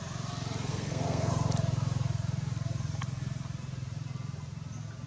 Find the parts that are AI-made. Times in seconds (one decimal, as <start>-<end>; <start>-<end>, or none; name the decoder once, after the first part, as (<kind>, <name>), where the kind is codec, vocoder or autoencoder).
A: 0.7-1.3 (codec, SNAC)